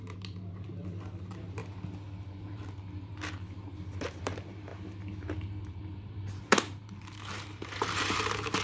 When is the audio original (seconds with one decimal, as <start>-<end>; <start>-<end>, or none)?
1.6-2.2; 3.1-4.2; 4.7-5.8